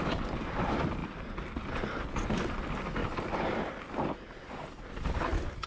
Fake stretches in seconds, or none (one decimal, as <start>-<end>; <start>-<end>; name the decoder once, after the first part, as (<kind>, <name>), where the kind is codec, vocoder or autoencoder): none